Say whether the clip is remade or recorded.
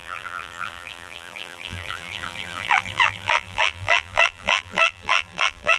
remade